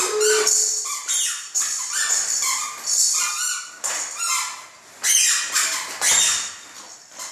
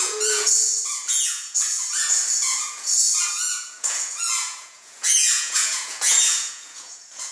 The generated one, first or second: second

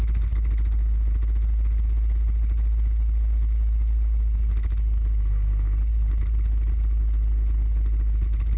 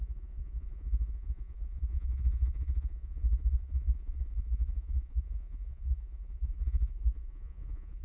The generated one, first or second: second